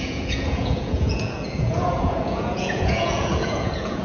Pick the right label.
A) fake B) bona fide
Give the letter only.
A